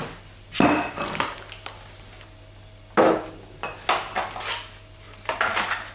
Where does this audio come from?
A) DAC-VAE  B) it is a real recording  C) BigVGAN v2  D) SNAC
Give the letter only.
B